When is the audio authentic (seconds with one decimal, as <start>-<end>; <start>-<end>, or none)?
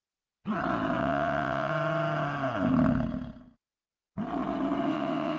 0.0-1.0; 1.7-4.9